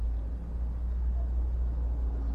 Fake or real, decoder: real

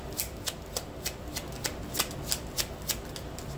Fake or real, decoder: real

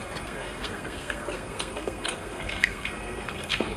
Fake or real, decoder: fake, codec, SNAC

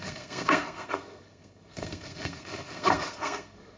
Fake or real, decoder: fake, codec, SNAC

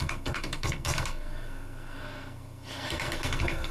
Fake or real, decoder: fake, codec, SNAC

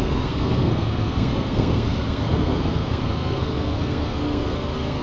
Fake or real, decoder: fake, codec, SNAC